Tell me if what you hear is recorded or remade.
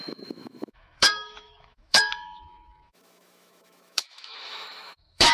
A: remade